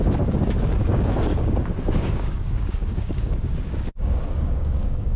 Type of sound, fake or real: fake